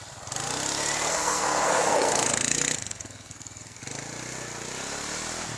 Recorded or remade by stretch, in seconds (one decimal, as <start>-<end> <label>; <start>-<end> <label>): 0.0-1.1 recorded; 1.1-3.8 remade; 3.8-5.6 recorded

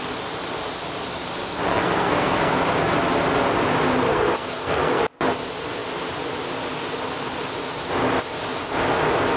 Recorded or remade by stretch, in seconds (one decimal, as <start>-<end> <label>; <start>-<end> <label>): 0.0-1.7 recorded; 1.7-2.6 remade; 2.6-4.1 recorded; 4.1-5.0 remade; 5.0-9.4 recorded

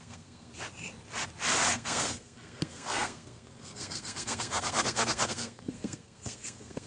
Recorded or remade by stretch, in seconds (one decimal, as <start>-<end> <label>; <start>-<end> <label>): 0.0-0.5 remade; 0.5-1.7 recorded; 1.7-6.9 remade